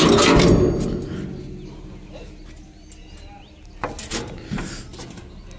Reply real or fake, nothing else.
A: real